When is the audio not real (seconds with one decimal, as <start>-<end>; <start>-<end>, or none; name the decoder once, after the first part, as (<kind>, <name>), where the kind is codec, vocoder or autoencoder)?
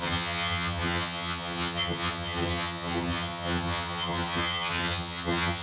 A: 0.0-5.6 (vocoder, HiFi-GAN)